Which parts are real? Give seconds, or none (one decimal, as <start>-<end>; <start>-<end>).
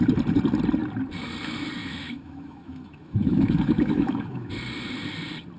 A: 0.0-1.8; 4.5-5.6